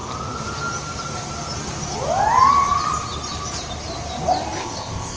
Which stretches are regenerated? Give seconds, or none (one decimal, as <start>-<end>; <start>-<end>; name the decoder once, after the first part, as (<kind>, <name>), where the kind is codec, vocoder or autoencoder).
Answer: 4.6-5.2 (codec, ZipCodec)